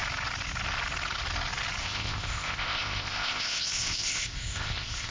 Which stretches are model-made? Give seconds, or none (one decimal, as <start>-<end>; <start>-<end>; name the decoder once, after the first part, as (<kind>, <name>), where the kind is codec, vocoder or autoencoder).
1.8-5.1 (codec, ZipCodec)